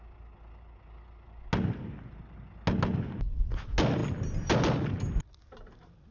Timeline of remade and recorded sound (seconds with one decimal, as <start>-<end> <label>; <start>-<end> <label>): 0.0-6.1 recorded